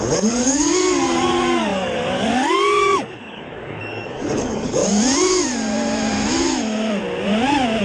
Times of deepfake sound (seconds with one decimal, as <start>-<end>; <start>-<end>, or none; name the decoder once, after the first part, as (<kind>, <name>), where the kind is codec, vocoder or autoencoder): 0.0-4.8 (codec, DAC)